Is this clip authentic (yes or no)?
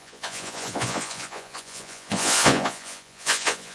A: no